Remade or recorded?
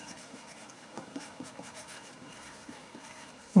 remade